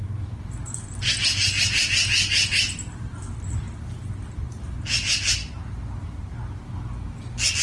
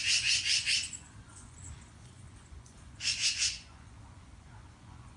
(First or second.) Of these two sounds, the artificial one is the second